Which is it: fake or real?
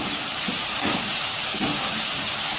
fake